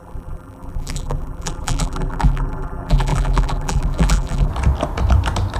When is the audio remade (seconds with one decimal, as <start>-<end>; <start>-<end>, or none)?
0.0-4.5